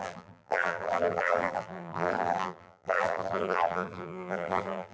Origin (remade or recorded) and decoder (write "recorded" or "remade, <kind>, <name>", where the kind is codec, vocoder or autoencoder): remade, vocoder, BigVGAN v2